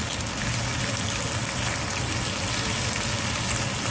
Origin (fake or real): real